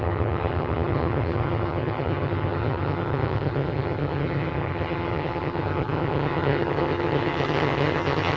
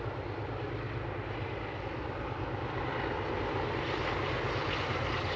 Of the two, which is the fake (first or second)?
first